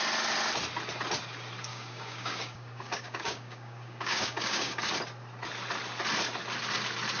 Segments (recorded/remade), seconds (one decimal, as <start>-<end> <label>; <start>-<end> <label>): 0.0-1.7 recorded; 1.7-4.8 remade; 4.8-7.2 recorded